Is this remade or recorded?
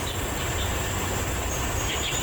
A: recorded